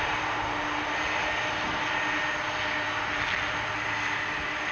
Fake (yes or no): no